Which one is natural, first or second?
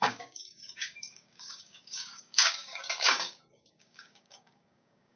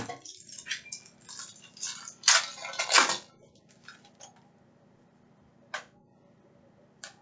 second